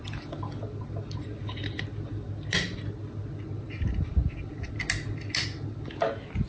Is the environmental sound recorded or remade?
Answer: recorded